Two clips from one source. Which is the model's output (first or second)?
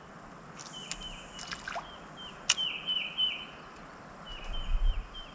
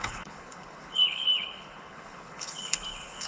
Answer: second